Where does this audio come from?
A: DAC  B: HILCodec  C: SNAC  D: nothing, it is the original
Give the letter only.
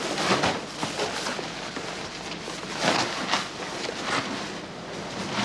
D